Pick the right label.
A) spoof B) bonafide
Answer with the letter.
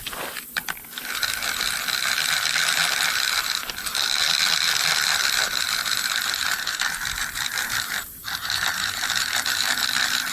B